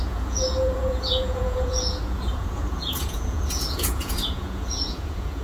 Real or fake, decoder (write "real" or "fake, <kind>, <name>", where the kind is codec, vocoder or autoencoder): fake, vocoder, Vocos